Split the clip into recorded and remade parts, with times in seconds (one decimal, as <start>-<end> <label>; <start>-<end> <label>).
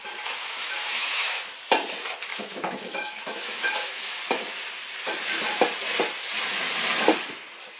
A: 0.0-0.4 recorded; 0.4-1.4 remade; 1.4-2.3 recorded; 2.3-4.2 remade; 4.2-7.8 recorded